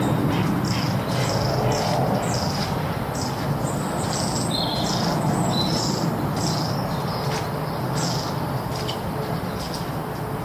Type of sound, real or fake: real